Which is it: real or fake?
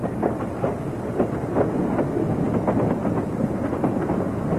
real